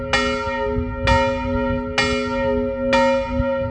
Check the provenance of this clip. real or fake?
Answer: real